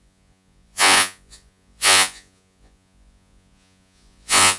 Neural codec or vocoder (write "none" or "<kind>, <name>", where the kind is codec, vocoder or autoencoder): vocoder, Vocos